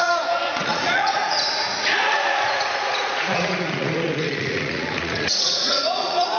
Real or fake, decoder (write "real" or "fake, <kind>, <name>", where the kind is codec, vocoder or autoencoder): fake, vocoder, Vocos